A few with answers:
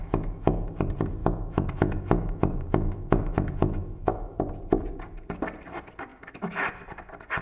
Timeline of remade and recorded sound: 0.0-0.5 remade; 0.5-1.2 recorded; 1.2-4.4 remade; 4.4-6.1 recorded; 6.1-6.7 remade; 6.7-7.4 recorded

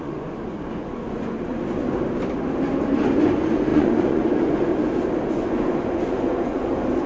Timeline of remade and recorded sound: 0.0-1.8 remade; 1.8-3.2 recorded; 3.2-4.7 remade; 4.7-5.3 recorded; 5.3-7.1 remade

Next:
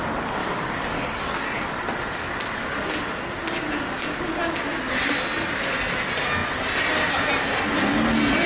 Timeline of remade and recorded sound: 0.0-0.4 recorded; 0.4-1.3 remade; 1.3-8.5 recorded